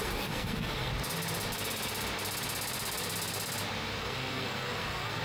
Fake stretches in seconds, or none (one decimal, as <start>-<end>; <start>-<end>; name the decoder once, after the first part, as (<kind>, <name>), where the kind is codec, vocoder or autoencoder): 0.0-0.9 (codec, SNAC); 4.0-5.2